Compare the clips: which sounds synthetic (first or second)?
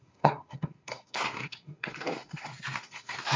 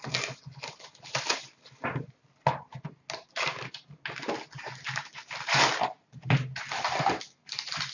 first